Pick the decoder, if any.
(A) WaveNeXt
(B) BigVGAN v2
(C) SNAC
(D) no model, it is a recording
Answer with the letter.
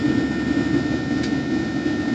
D